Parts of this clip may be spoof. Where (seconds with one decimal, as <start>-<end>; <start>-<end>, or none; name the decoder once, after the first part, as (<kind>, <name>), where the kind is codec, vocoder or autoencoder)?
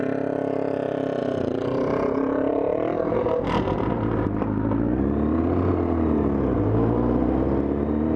1.2-3.9 (vocoder, BigVGAN v2)